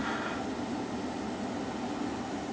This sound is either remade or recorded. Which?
recorded